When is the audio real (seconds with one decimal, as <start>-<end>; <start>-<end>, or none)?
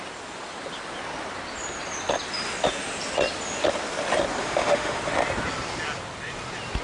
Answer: 0.0-4.4; 5.0-6.8